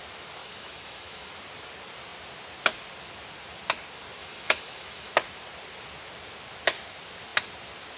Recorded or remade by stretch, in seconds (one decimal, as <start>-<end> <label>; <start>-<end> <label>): 0.0-0.4 recorded; 0.4-1.3 remade; 1.3-4.2 recorded; 4.2-5.1 remade; 5.1-8.0 recorded